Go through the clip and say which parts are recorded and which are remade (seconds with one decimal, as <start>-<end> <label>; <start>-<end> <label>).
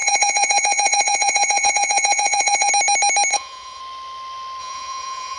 0.0-2.7 remade; 2.7-3.3 recorded; 3.3-3.8 remade; 3.8-4.6 recorded; 4.6-5.4 remade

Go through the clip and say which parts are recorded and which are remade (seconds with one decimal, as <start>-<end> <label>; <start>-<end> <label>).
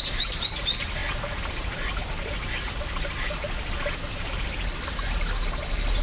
0.0-6.0 recorded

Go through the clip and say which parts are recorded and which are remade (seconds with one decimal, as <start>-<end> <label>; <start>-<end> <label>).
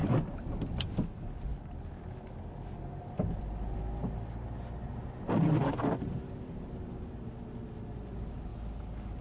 0.0-9.2 recorded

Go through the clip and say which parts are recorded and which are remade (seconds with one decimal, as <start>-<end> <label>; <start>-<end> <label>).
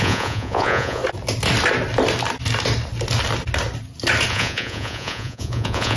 0.0-1.0 remade; 1.0-4.3 recorded; 4.3-6.0 remade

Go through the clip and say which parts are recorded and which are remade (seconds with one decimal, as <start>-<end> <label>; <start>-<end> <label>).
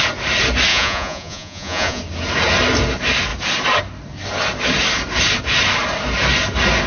0.0-0.7 recorded; 0.7-2.0 remade; 2.0-6.9 recorded